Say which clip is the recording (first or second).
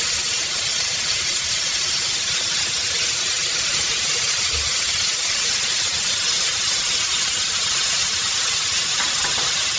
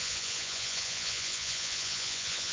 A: first